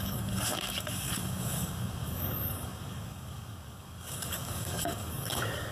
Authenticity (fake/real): fake